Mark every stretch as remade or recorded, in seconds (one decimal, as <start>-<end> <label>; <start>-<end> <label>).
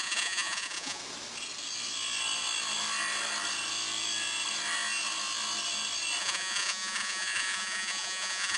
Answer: 0.0-1.0 remade; 1.0-6.2 recorded; 6.2-8.6 remade